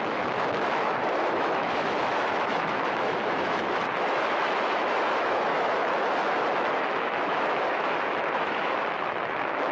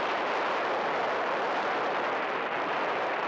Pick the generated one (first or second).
first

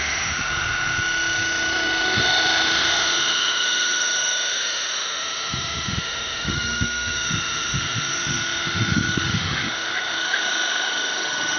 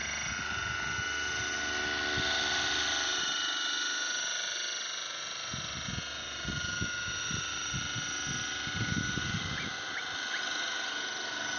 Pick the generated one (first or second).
first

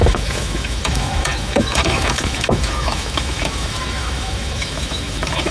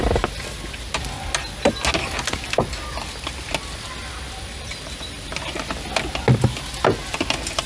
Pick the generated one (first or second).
first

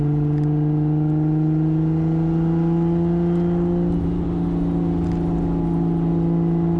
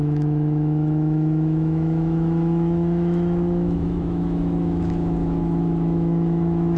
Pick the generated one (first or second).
second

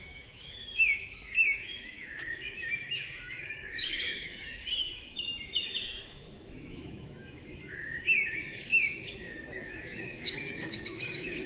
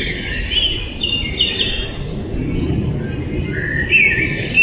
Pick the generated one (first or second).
first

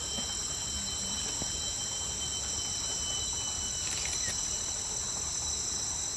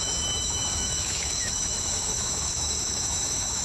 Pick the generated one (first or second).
second